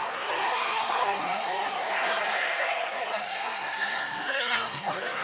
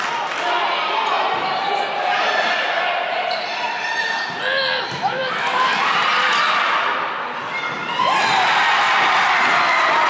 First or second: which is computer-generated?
first